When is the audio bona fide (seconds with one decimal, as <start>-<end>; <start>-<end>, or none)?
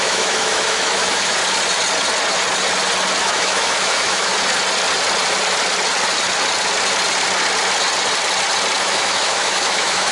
1.4-3.2; 4.3-8.8